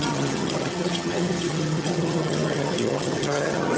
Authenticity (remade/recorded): remade